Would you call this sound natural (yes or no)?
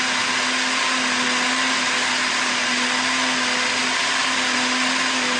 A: yes